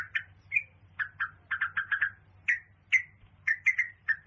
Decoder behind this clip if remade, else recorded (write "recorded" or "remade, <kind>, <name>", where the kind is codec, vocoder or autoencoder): recorded